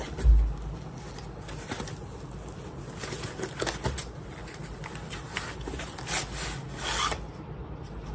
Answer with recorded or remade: recorded